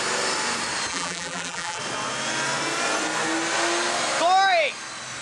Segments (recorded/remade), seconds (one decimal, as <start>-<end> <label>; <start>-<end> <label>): 0.0-0.9 recorded; 0.9-1.8 remade; 1.8-5.2 recorded